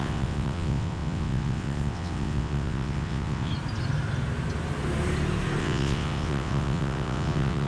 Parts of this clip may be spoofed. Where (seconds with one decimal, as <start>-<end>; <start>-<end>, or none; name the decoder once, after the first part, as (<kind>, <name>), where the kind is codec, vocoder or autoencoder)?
0.0-3.5 (vocoder, WaveNeXt); 5.6-7.7